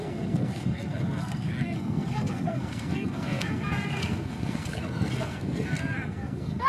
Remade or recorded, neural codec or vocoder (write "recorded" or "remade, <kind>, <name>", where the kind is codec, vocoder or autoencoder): remade, codec, SNAC